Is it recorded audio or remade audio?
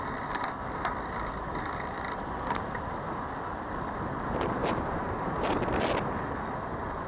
recorded